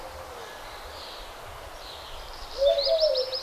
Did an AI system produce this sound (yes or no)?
no